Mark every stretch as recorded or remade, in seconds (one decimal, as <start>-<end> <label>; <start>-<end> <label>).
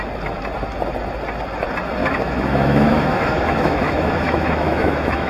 0.0-2.0 recorded; 2.0-5.3 remade